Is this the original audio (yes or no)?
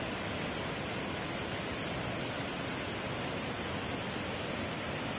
yes